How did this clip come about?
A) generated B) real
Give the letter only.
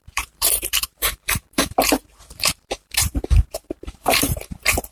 A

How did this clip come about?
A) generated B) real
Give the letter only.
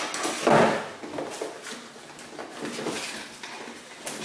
B